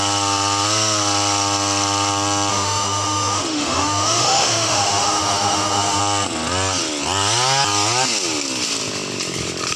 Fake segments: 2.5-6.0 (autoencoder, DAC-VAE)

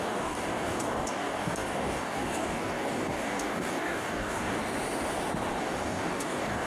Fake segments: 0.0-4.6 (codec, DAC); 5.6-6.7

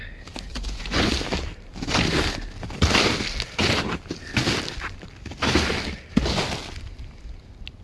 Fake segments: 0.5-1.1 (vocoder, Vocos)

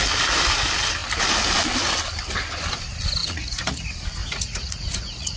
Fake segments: 3.2-3.8 (vocoder, Vocos); 4.2-5.4

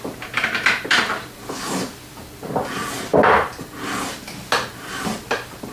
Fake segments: none

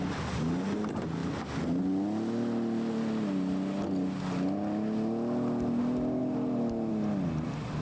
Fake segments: none